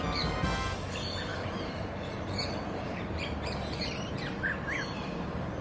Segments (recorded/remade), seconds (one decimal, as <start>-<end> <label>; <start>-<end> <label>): 0.0-1.3 recorded; 1.3-4.2 remade; 4.2-5.6 recorded